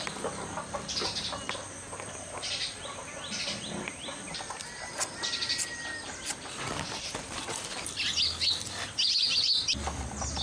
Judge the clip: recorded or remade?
recorded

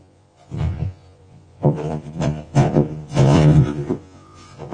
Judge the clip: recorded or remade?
remade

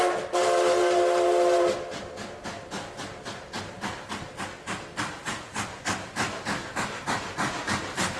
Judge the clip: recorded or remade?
recorded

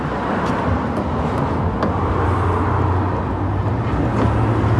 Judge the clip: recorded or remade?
recorded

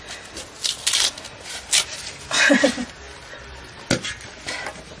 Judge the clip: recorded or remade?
recorded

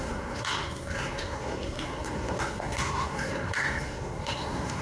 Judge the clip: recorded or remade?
remade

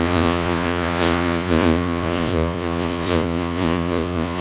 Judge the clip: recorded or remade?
remade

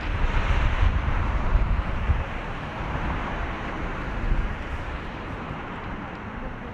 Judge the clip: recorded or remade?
remade